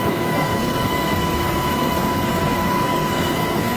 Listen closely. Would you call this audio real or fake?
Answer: fake